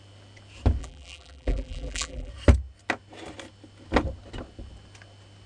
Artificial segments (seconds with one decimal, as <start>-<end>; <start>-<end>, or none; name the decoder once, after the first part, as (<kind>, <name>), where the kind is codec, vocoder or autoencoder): 0.8-2.3 (vocoder, BigVGAN v2)